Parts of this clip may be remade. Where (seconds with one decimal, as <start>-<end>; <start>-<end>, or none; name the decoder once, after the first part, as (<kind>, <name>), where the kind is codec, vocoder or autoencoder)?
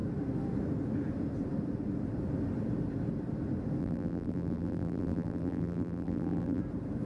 3.8-6.6 (vocoder, BigVGAN v2)